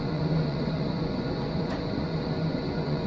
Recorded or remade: remade